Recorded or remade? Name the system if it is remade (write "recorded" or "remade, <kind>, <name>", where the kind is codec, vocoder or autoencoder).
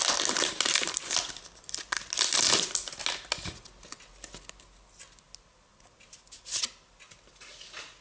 recorded